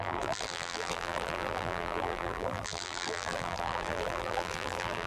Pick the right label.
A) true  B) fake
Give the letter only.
B